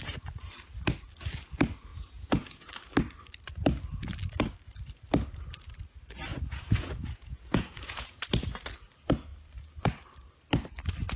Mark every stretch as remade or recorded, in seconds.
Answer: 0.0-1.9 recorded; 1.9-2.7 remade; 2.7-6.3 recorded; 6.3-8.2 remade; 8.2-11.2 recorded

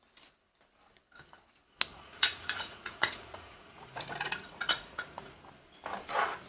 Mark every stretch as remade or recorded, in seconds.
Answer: 0.0-1.9 recorded; 1.9-5.4 remade; 5.4-6.5 recorded